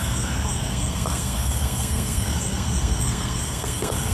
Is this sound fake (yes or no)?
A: yes